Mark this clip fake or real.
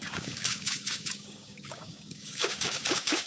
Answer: fake